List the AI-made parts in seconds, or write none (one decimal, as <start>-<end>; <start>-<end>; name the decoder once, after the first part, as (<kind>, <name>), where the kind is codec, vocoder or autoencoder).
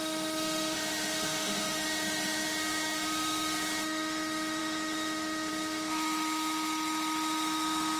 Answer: 0.0-8.0 (autoencoder, DAC-VAE)